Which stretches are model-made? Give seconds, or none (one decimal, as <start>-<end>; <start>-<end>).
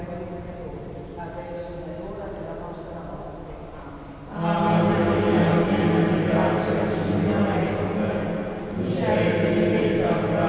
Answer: none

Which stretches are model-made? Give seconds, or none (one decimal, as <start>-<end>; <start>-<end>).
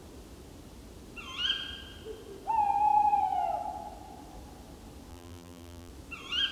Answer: 5.1-5.9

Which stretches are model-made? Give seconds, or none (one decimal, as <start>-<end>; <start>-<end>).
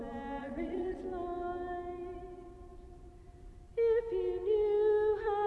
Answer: 0.4-1.0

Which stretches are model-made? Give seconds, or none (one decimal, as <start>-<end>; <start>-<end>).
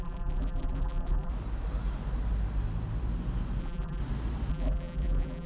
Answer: 0.0-1.3; 3.6-4.0; 4.5-5.5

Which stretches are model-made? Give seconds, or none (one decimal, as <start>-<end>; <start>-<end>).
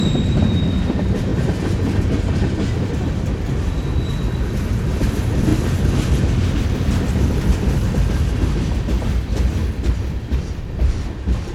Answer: 0.0-5.5; 6.2-11.5